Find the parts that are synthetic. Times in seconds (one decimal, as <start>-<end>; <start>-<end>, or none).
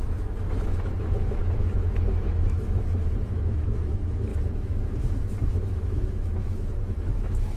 0.0-7.6